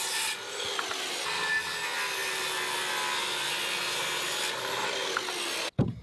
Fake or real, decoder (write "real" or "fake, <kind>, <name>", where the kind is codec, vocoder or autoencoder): real